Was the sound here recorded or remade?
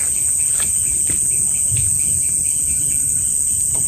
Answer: recorded